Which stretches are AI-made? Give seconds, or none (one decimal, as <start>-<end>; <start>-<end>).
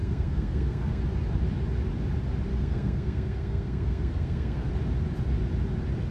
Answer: 0.0-1.0; 2.5-4.7